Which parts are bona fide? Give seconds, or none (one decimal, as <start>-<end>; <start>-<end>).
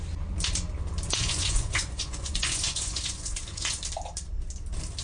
0.0-1.2; 3.8-5.0